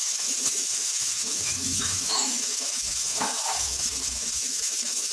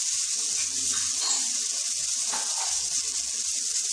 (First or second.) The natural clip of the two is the second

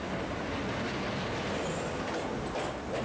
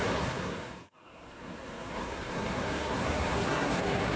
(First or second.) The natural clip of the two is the first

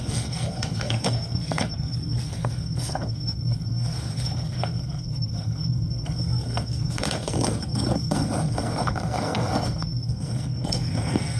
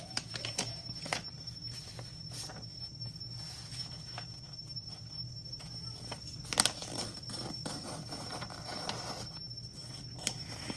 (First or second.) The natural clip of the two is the second